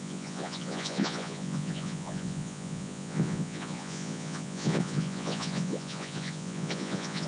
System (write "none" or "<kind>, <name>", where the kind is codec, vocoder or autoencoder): vocoder, Vocos